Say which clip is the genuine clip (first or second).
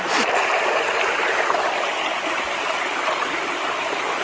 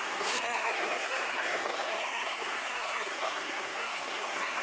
first